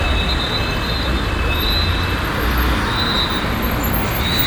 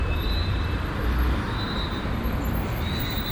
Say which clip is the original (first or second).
first